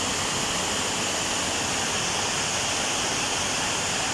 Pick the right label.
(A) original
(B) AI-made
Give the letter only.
A